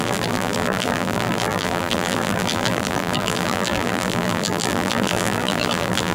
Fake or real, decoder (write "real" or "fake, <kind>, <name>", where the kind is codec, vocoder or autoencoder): fake, vocoder, BigVGAN v2